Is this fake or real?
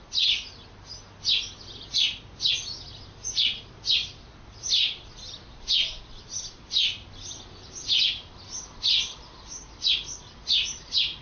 real